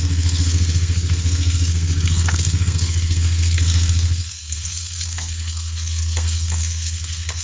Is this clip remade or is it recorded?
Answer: remade